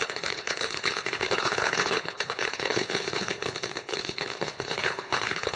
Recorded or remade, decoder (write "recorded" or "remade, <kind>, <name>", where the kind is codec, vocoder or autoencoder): remade, codec, HILCodec